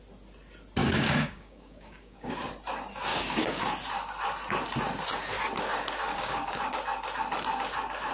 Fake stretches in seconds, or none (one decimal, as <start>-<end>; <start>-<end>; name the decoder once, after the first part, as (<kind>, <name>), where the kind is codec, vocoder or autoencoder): 0.8-2.5 (codec, DAC); 3.1-3.6; 6.1-6.6